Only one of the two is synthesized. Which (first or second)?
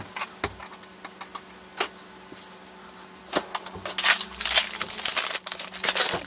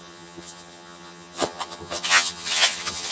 second